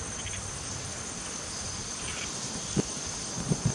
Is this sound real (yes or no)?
yes